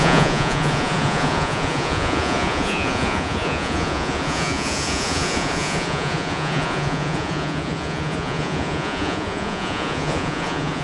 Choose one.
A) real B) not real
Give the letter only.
B